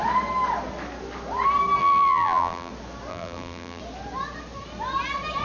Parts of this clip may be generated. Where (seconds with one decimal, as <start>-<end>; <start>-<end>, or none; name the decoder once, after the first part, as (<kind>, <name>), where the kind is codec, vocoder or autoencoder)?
1.8-2.7 (vocoder, BigVGAN v2); 3.1-3.8